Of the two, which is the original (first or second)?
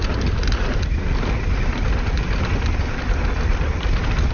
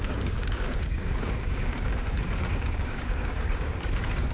first